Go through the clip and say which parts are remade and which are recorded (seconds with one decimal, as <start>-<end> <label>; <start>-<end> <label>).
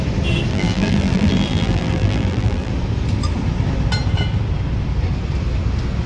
0.0-0.5 recorded; 0.5-2.7 remade; 2.7-6.1 recorded